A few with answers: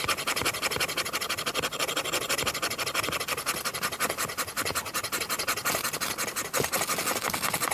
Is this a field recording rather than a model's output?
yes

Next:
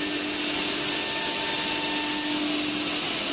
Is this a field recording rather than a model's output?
yes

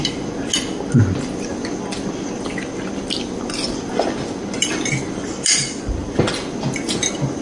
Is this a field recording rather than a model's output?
yes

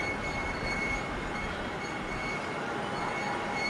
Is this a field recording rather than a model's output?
no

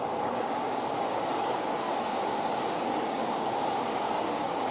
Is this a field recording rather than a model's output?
no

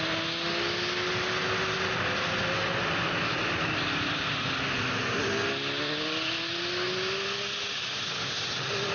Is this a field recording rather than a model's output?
yes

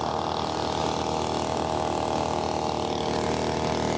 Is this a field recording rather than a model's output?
yes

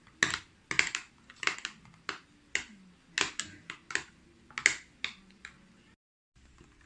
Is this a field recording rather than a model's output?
yes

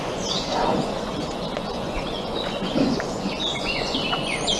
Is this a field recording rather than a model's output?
no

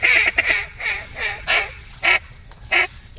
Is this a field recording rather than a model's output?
no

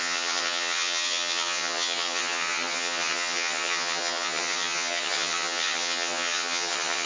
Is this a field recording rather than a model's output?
no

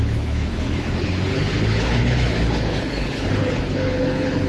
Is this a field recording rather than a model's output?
no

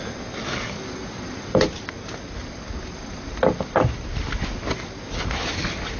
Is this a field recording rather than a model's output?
yes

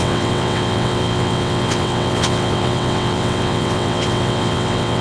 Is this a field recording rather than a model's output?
no